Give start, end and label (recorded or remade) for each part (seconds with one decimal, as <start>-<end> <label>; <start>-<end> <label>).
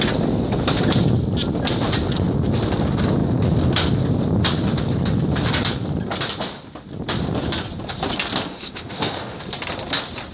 0.0-8.5 recorded; 8.5-9.4 remade; 9.4-10.3 recorded